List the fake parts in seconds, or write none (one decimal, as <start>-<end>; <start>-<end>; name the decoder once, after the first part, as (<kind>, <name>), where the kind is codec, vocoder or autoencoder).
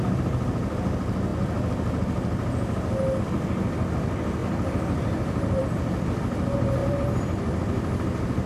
4.4-5.6 (vocoder, BigVGAN v2); 6.8-8.5